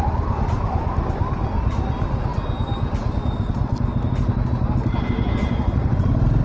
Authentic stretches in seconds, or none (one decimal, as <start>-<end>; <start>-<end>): 0.0-6.4